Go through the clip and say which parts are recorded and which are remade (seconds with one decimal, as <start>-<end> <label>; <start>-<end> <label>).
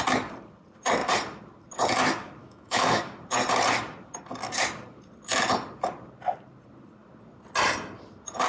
0.0-2.4 recorded; 2.4-3.0 remade; 3.0-8.5 recorded